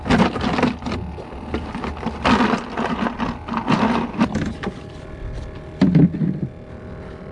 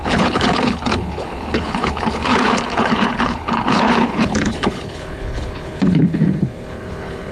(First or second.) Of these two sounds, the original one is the first